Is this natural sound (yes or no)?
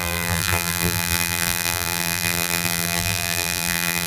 no